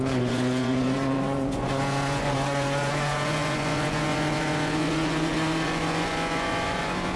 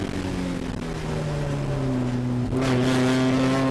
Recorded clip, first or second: second